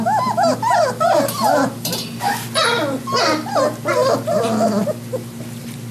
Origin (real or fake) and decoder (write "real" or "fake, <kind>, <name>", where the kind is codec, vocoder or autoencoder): real